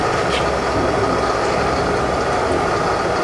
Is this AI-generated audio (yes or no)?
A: no